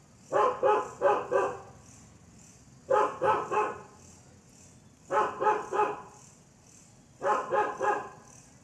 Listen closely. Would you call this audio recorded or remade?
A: recorded